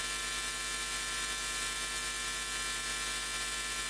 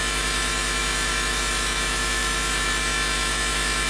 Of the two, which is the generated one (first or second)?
second